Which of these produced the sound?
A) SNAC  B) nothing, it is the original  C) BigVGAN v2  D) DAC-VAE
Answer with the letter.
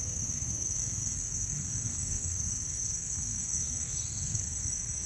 A